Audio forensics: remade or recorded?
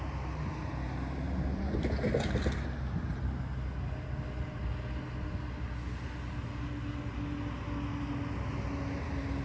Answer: recorded